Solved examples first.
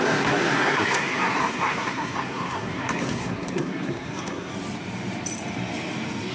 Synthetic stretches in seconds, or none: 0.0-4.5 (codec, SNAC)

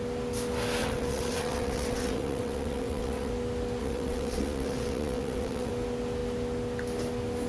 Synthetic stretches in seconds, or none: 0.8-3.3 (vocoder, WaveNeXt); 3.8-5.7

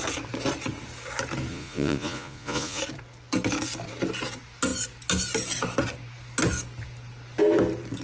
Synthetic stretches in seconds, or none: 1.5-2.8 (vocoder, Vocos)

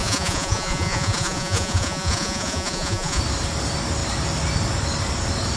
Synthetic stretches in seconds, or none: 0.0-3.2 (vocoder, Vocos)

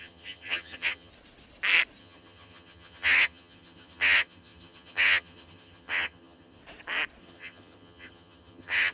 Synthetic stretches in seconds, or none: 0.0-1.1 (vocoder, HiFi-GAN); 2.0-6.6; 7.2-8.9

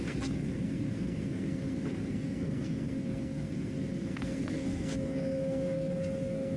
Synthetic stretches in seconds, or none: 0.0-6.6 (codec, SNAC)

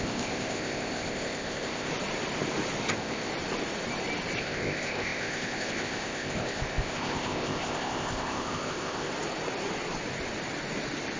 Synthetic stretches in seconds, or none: 0.0-1.9 (codec, ZipCodec); 2.9-3.3; 4.4-9.1

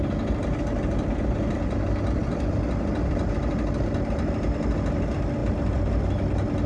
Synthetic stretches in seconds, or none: 2.2-3.3 (vocoder, BigVGAN v2)